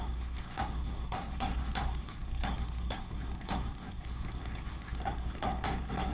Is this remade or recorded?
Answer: remade